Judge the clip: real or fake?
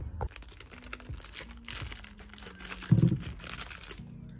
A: real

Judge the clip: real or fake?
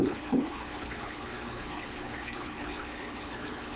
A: fake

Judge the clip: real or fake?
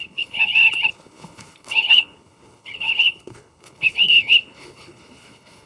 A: fake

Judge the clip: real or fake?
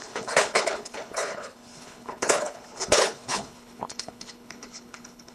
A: fake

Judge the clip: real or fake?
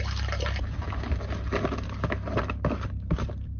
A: real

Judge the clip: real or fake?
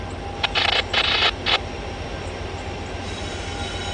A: real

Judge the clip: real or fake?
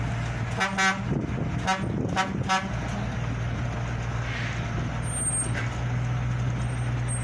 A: real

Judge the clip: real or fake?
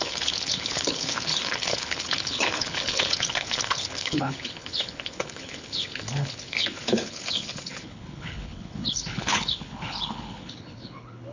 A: fake